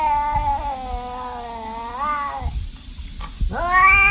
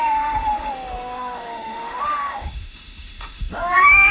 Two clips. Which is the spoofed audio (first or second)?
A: second